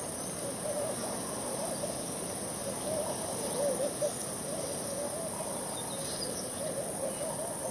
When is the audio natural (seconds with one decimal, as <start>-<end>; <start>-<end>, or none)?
0.0-7.7